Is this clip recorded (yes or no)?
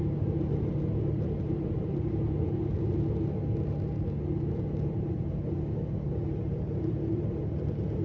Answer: yes